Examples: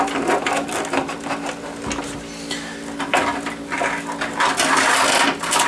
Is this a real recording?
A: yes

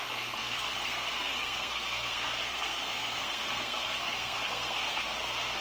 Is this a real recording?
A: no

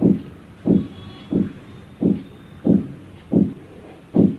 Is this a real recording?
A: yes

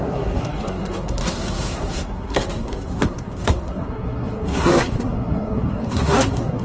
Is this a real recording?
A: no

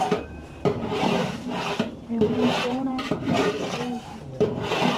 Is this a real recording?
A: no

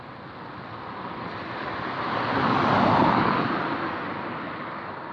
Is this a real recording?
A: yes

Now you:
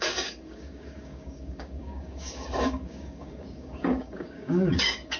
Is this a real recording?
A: no